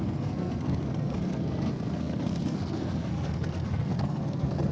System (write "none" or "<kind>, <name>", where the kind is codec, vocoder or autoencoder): codec, SNAC